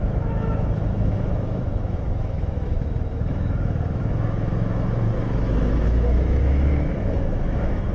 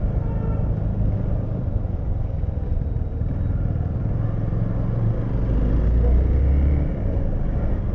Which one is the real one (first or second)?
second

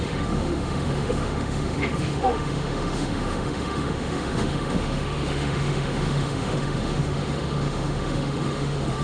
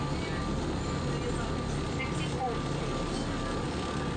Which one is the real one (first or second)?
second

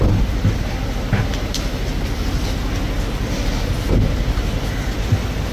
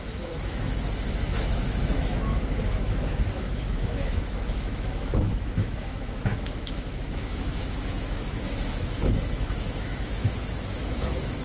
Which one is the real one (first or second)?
first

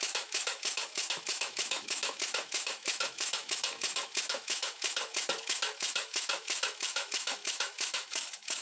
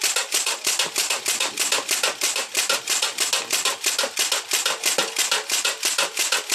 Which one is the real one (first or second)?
second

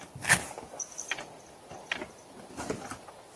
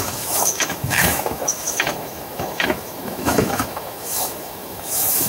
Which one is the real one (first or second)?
first